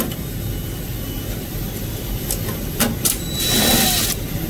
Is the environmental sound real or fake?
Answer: real